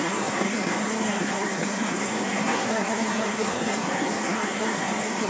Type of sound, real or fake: fake